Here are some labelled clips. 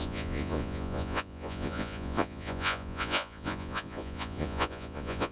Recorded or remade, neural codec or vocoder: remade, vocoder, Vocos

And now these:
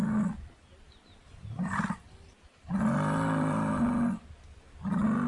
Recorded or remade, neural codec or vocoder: recorded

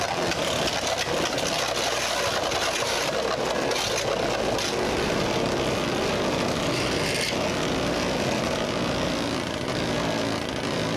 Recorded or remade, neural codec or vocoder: recorded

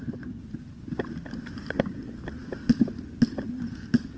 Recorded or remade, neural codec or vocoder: recorded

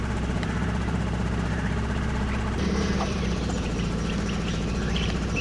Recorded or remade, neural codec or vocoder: remade, vocoder, BigVGAN v2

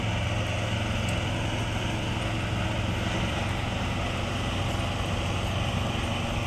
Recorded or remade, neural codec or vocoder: recorded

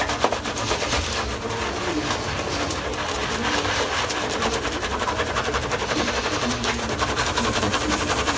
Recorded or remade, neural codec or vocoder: remade, vocoder, BigVGAN v2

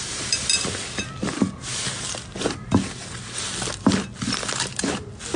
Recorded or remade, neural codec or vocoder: recorded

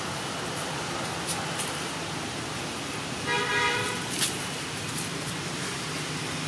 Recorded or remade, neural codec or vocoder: recorded